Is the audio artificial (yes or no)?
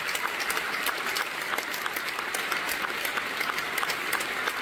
no